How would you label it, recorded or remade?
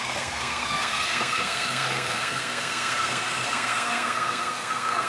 remade